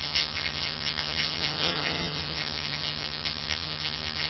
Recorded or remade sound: remade